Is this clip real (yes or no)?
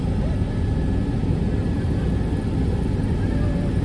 yes